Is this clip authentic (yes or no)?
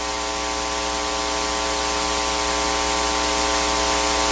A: yes